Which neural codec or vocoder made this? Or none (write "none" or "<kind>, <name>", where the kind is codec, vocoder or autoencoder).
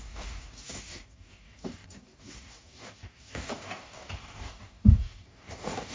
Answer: codec, DAC